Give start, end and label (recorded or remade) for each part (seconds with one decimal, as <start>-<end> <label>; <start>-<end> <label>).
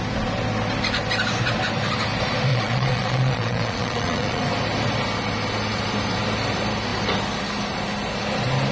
0.0-2.5 recorded; 2.5-4.4 remade; 4.4-8.7 recorded